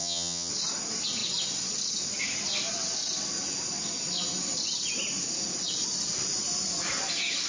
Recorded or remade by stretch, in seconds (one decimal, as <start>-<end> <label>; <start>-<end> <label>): 0.0-0.5 remade; 0.5-7.5 recorded